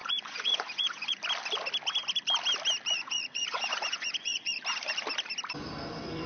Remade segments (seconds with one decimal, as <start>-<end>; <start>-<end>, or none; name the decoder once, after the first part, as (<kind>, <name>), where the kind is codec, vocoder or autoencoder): 0.0-1.2 (vocoder, Vocos); 2.9-4.6